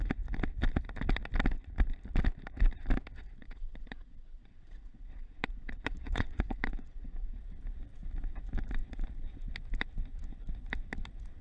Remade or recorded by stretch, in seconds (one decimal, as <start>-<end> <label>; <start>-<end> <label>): 0.0-3.4 recorded; 3.4-7.4 remade; 7.4-11.4 recorded